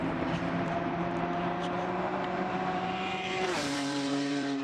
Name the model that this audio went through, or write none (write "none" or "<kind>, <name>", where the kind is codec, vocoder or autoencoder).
vocoder, BigVGAN v2